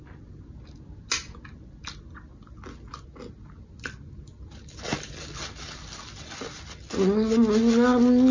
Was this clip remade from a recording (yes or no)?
no